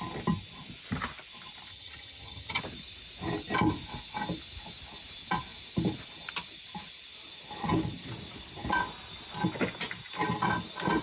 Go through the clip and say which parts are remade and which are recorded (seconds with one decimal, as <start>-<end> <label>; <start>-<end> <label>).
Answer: 0.0-1.7 recorded; 1.7-2.6 remade; 2.6-11.0 recorded